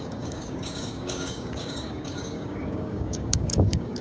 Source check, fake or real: fake